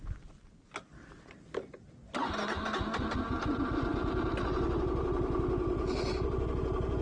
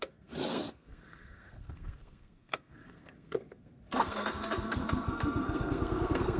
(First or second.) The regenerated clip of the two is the second